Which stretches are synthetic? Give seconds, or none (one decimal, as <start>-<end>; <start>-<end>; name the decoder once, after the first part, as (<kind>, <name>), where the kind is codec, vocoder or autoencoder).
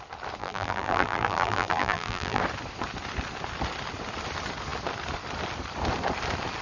0.4-2.4 (vocoder, BigVGAN v2)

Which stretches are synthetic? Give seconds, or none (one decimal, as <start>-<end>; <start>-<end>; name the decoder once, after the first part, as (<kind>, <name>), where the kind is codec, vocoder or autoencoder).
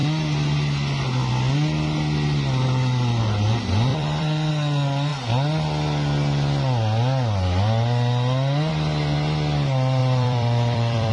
3.9-4.5 (vocoder, BigVGAN v2); 10.0-11.1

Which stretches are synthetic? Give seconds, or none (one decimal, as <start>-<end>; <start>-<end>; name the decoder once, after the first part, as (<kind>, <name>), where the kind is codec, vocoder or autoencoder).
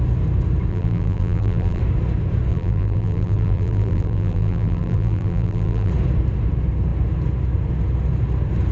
0.7-1.8 (vocoder, BigVGAN v2); 2.5-5.9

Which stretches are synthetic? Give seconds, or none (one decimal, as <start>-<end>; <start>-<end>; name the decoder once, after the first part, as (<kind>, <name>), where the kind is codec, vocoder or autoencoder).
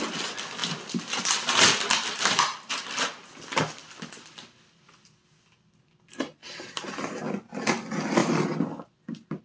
3.8-4.3 (vocoder, BigVGAN v2); 6.4-7.2; 8.2-9.4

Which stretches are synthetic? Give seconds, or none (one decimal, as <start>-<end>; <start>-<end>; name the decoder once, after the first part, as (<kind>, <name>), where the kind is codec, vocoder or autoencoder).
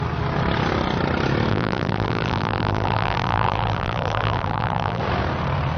1.5-5.0 (vocoder, BigVGAN v2)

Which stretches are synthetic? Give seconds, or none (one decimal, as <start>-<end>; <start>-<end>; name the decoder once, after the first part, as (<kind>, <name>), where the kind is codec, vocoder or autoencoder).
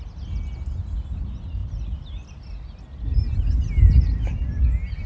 none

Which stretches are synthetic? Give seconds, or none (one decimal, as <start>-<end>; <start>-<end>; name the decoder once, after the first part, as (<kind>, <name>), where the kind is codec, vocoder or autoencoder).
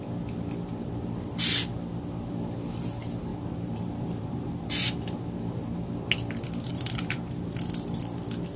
3.3-5.2 (vocoder, BigVGAN v2); 6.7-7.6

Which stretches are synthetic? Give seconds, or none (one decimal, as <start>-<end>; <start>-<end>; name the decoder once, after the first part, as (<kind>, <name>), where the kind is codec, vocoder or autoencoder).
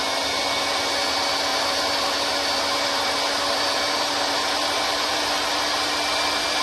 1.5-5.2 (vocoder, BigVGAN v2)